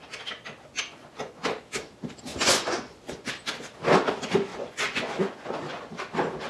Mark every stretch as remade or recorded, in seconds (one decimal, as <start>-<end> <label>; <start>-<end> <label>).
0.0-0.7 recorded; 0.7-1.5 remade; 1.5-2.3 recorded; 2.3-3.3 remade; 3.3-4.5 recorded; 4.5-5.9 remade; 5.9-6.5 recorded